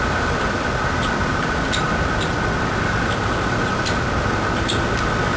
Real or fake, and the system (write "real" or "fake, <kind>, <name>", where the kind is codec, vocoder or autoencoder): real